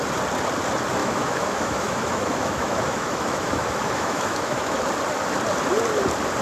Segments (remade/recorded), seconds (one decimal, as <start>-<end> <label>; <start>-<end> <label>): 0.0-1.0 recorded; 1.0-4.8 remade; 4.8-6.4 recorded